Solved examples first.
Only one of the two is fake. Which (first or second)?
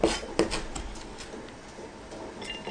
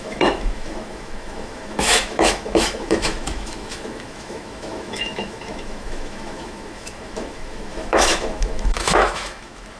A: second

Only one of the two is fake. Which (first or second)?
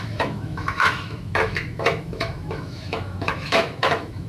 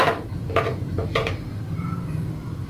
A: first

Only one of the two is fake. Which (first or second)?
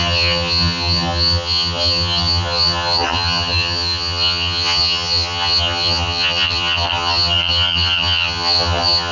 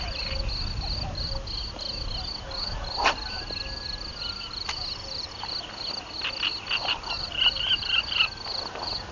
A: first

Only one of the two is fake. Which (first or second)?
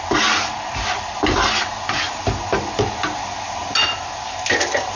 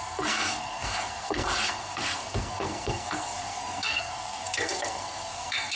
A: second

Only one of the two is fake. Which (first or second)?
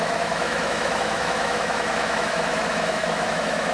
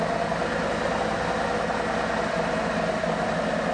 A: first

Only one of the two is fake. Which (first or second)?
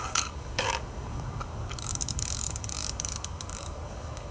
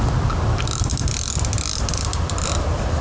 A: first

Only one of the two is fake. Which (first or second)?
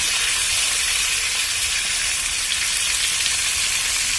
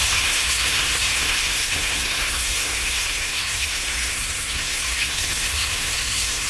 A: second